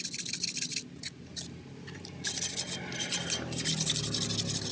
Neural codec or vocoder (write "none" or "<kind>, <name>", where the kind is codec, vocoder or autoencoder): none